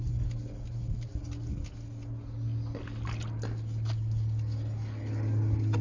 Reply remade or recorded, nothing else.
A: recorded